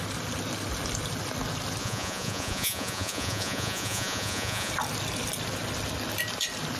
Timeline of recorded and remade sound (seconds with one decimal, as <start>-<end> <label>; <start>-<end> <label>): 0.0-1.8 recorded; 1.8-4.7 remade; 4.7-6.8 recorded